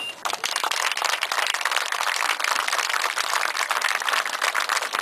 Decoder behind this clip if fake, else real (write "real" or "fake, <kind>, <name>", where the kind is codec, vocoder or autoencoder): real